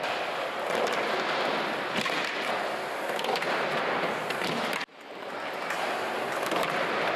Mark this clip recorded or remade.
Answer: recorded